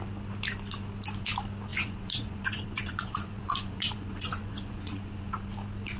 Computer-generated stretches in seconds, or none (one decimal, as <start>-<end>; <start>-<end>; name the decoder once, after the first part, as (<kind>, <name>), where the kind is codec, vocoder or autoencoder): 1.7-5.3 (vocoder, Vocos)